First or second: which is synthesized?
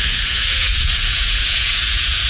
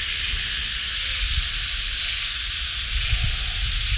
first